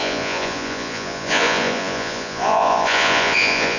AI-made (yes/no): yes